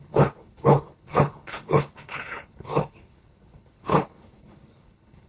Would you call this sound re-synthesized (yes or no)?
yes